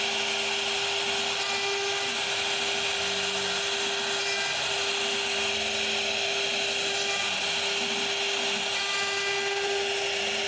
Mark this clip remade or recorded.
recorded